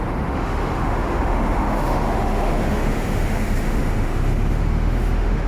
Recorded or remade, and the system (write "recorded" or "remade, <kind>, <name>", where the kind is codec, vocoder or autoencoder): remade, autoencoder, DAC-VAE